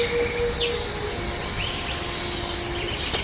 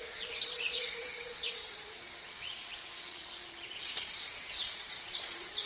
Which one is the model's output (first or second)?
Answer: second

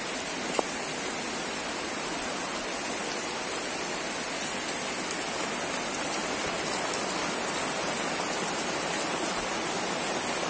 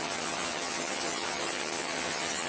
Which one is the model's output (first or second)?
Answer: second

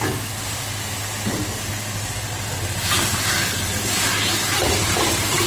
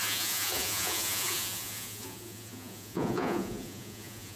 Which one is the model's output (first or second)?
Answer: second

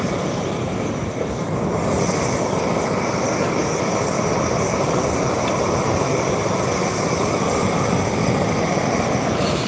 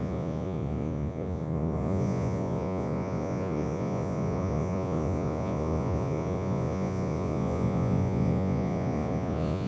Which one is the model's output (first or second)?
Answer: second